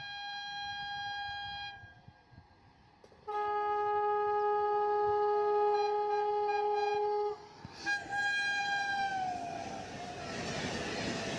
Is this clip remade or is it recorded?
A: recorded